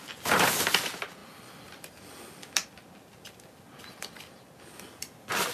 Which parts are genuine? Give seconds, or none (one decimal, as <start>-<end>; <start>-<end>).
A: 0.0-5.5